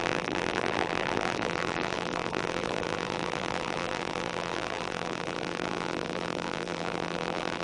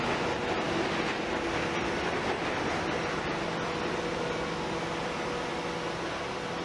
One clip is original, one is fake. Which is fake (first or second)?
first